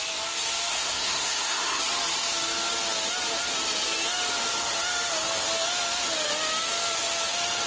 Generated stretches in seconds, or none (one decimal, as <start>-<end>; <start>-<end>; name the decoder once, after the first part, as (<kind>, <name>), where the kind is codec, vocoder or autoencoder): 0.7-1.8 (codec, SNAC)